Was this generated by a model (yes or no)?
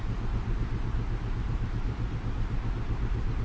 no